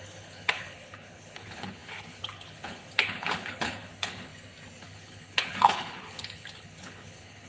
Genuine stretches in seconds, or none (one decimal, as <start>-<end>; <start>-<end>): 4.3-4.8